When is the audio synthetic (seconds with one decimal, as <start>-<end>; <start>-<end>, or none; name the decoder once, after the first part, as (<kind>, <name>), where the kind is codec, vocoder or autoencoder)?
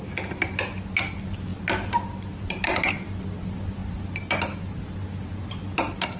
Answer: none